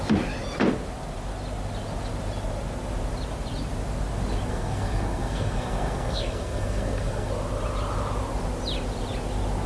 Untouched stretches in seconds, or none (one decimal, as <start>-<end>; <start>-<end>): 0.0-4.5; 7.3-9.7